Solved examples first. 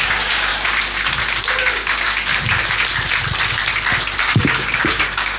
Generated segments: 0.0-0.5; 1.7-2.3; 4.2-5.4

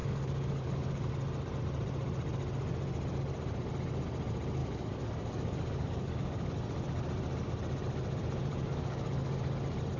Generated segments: 0.0-1.1; 4.6-6.5; 8.5-9.4

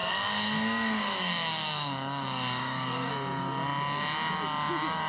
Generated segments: 0.0-3.1

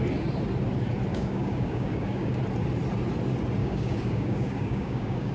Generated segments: 1.1-2.4; 3.6-5.3

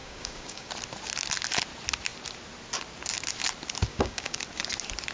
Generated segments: 0.0-0.7; 3.9-4.4

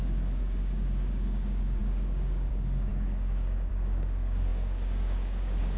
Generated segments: 0.0-5.8

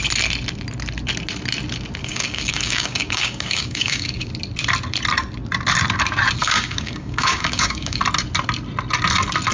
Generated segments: 2.0-4.3; 6.4-8.0

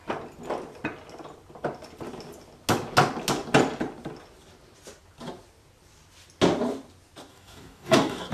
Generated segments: 7.3-8.3